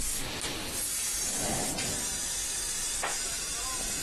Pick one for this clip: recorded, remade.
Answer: recorded